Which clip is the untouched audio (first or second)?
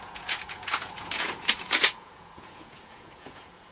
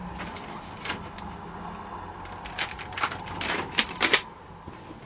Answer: second